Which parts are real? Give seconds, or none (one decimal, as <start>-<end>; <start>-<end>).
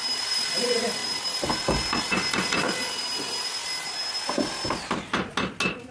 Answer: 0.0-5.9